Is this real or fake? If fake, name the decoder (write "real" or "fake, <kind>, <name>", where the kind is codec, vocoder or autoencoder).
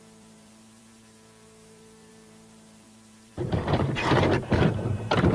fake, vocoder, BigVGAN v2